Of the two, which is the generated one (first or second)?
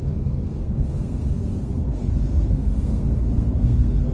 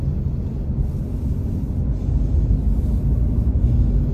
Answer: first